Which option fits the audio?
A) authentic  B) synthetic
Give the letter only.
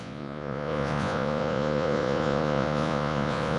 B